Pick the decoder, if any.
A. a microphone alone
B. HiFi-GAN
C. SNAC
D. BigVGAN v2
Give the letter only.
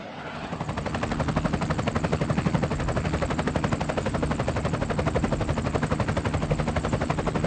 A